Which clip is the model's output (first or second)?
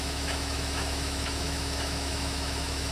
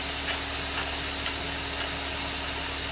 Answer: first